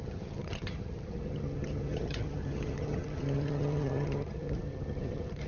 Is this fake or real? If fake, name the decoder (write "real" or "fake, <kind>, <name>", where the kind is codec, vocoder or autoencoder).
fake, vocoder, HiFi-GAN